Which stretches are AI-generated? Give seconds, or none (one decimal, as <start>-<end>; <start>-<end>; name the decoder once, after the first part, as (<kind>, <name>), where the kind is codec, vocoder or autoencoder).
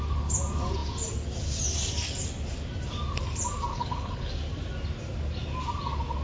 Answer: 3.7-4.3 (codec, HILCodec)